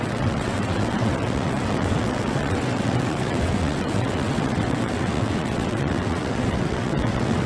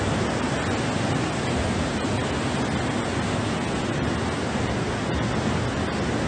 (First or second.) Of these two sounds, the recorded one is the second